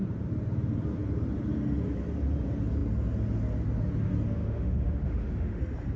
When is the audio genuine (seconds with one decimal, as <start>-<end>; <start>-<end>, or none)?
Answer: 0.0-4.4; 5.6-6.0